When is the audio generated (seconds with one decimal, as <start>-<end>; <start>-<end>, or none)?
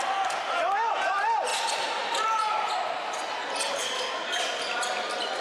none